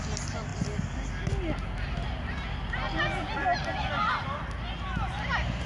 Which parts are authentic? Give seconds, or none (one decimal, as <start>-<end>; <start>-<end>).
0.0-5.7